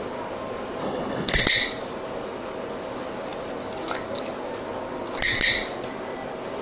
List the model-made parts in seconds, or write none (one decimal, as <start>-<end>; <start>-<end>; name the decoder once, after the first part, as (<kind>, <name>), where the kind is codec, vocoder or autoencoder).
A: 0.8-1.4 (codec, HILCodec)